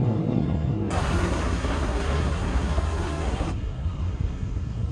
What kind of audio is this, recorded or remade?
remade